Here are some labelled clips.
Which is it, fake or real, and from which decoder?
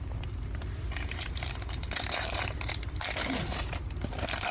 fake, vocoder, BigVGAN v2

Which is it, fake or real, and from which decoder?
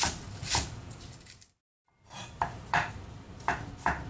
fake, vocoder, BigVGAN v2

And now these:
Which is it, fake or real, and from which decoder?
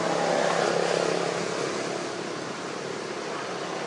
real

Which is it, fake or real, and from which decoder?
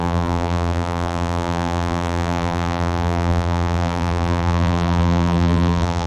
fake, vocoder, BigVGAN v2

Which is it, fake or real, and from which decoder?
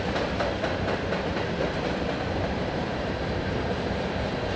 fake, vocoder, BigVGAN v2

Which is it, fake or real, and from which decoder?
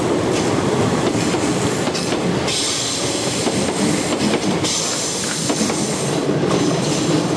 fake, vocoder, BigVGAN v2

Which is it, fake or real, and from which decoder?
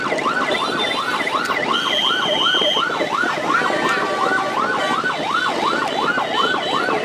real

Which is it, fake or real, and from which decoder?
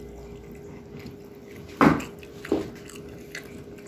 real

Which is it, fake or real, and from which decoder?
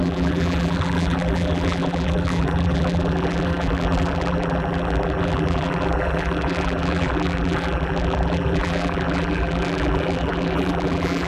fake, vocoder, BigVGAN v2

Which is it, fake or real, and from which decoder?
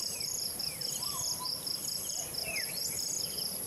fake, vocoder, BigVGAN v2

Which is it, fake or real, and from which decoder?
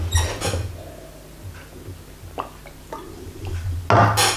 real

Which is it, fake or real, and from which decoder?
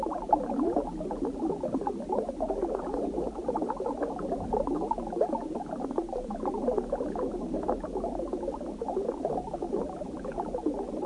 real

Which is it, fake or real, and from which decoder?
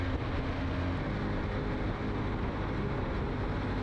real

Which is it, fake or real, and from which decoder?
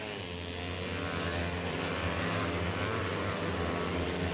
real